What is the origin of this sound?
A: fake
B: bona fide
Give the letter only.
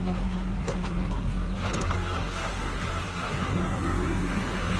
A